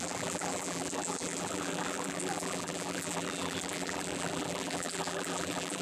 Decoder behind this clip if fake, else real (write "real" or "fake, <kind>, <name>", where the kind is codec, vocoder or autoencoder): fake, vocoder, BigVGAN v2